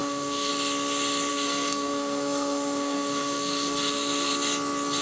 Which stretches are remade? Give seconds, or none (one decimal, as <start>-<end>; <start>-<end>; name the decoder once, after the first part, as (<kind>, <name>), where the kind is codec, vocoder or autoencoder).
0.0-0.5 (codec, SNAC); 1.3-4.3